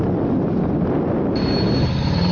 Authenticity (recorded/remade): recorded